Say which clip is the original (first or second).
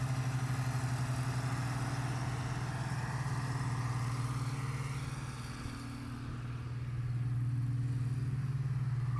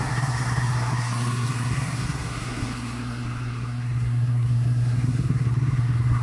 first